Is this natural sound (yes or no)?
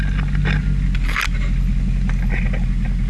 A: yes